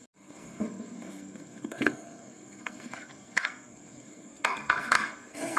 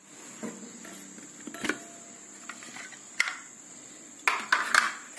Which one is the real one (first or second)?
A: second